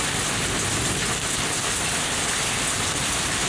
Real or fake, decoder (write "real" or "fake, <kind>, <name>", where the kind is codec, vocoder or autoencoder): real